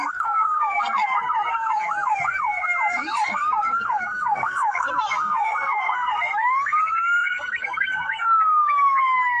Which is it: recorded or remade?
remade